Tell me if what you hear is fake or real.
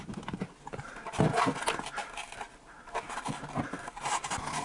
real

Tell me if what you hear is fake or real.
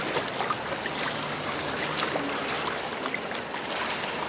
real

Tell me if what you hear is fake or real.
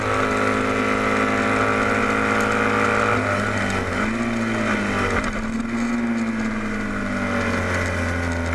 real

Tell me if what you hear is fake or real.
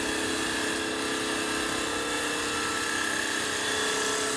real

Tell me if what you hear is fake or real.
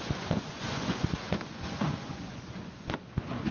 fake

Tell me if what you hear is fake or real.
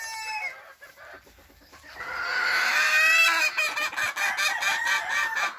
real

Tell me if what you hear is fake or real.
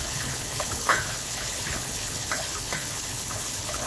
fake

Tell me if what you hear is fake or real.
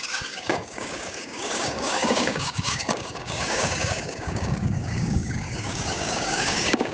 fake